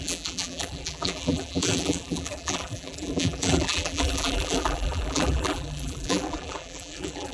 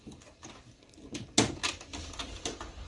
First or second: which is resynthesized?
first